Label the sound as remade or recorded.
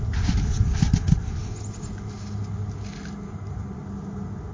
recorded